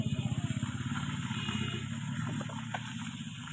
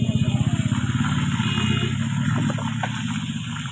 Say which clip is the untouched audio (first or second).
second